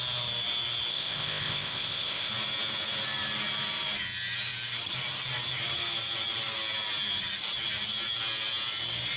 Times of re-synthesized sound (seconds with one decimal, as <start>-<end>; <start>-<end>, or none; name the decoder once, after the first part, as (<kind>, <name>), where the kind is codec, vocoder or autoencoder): 0.9-2.3 (codec, ZipCodec)